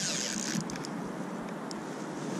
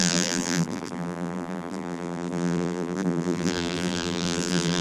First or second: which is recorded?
first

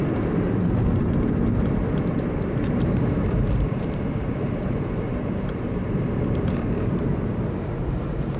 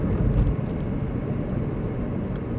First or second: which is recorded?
second